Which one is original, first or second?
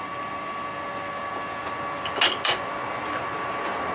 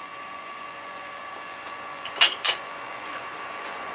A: first